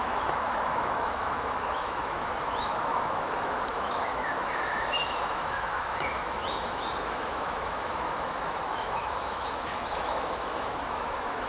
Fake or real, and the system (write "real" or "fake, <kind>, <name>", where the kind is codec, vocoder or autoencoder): fake, autoencoder, DAC-VAE